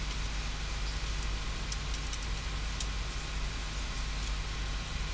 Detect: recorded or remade recorded